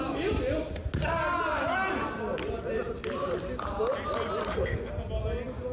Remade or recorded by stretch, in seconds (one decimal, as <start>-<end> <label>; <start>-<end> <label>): 0.0-4.4 recorded; 4.4-4.9 remade; 4.9-5.7 recorded

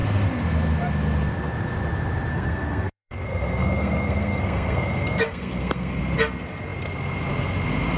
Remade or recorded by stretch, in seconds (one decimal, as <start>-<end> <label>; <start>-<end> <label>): 0.0-2.3 recorded; 2.3-6.0 remade; 6.0-8.0 recorded

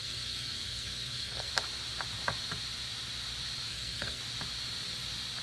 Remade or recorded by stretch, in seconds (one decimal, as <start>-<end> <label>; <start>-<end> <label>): 0.0-1.5 remade; 1.5-3.7 recorded; 3.7-4.2 remade; 4.2-5.4 recorded

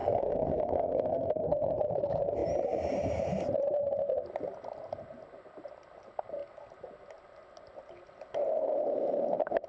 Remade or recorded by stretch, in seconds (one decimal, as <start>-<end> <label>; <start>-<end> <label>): 0.0-1.8 remade; 1.8-9.7 recorded